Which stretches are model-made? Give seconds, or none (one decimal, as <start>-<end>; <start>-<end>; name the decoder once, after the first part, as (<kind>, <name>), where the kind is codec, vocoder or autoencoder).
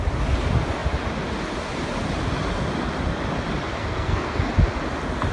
3.8-4.5 (codec, SNAC)